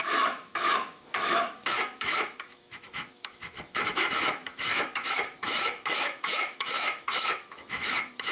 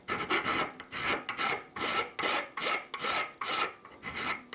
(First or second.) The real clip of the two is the second